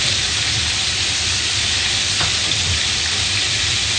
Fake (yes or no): yes